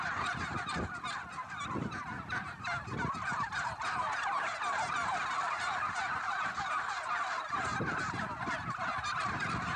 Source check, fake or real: real